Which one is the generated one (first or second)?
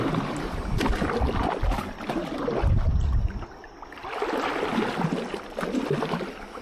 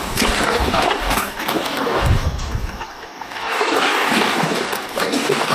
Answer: second